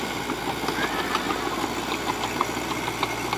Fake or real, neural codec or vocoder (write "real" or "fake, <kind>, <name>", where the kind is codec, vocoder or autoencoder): real